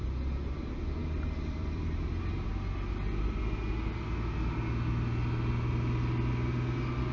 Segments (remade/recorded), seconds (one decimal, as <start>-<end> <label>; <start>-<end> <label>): 0.0-1.0 recorded; 1.0-2.5 remade; 2.5-7.1 recorded